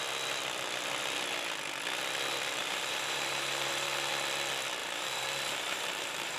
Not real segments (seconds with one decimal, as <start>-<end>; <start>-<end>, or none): 2.6-4.1; 4.8-6.4